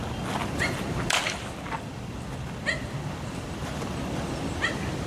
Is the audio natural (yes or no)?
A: yes